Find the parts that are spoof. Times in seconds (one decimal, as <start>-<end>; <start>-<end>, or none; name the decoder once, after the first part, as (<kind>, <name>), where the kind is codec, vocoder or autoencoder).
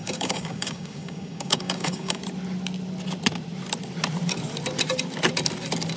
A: 0.0-2.2 (codec, DAC)